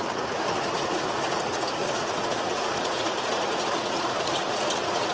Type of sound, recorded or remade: remade